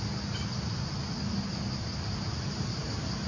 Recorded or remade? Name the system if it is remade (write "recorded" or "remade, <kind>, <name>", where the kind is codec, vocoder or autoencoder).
recorded